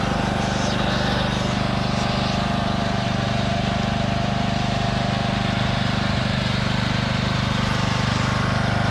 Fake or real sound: fake